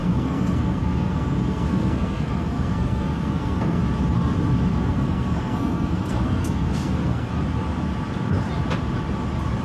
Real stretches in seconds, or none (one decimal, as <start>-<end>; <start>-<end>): 3.8-4.7; 7.3-9.6